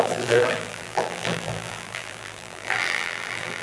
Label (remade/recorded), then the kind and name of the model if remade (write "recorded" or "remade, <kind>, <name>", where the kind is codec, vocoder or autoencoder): remade, vocoder, BigVGAN v2